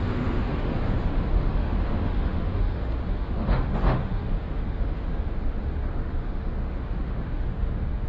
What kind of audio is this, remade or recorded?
remade